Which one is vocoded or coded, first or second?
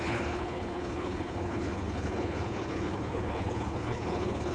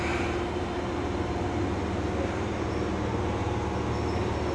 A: first